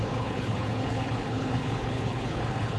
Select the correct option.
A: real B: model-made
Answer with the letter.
B